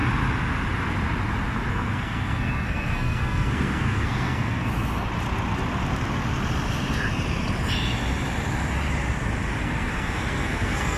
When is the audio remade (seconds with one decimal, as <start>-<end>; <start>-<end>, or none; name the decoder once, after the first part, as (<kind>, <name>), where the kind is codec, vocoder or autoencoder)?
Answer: 1.7-4.7 (codec, SNAC); 9.6-11.0